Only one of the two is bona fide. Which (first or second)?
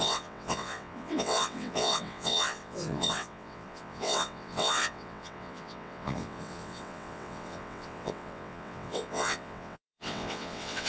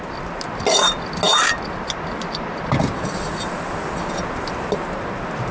second